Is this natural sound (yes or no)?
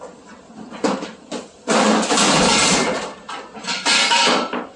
yes